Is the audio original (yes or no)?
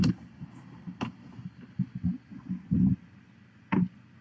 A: yes